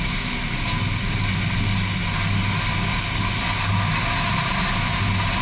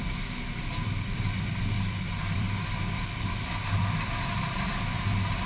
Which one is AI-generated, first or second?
second